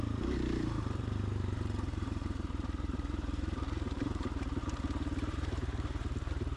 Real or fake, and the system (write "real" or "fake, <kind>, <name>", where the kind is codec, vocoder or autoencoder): fake, vocoder, BigVGAN v2